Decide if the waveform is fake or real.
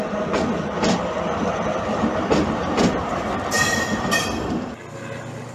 real